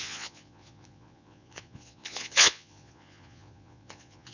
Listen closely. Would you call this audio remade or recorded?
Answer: remade